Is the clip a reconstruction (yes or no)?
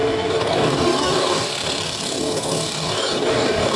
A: yes